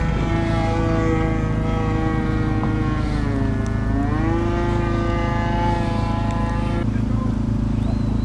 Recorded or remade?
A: recorded